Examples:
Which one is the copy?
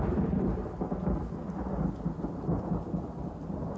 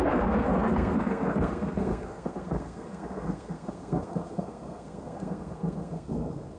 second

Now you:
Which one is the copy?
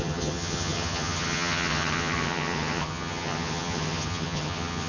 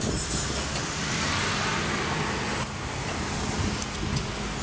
first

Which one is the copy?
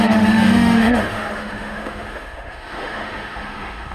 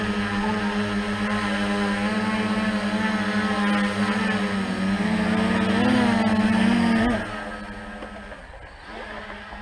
first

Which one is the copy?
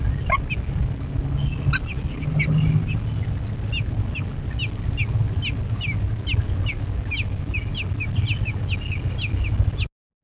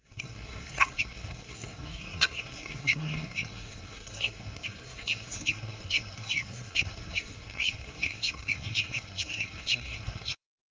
second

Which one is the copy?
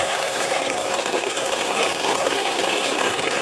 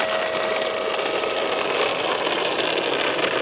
first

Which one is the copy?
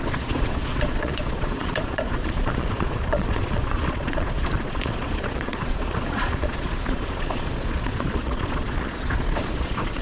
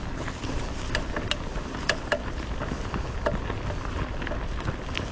first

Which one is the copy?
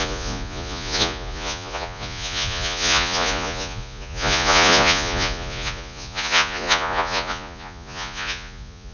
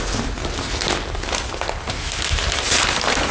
first